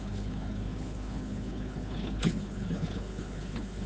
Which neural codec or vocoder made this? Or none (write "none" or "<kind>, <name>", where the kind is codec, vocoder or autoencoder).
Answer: codec, HILCodec